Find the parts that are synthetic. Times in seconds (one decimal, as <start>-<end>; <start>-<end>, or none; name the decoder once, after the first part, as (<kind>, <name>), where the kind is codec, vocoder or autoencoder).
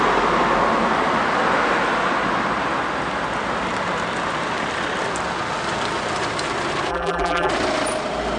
6.9-7.5 (vocoder, BigVGAN v2)